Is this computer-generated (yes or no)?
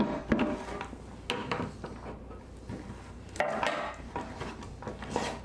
no